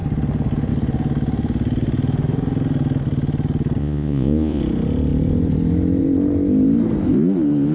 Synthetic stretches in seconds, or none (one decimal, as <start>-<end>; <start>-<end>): 3.8-4.6